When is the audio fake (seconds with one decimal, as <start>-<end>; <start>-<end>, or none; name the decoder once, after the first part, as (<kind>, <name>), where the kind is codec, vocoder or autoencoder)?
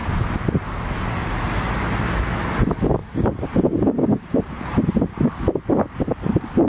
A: 0.0-1.8 (vocoder, BigVGAN v2); 3.0-6.2